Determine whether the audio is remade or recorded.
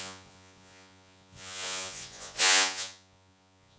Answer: remade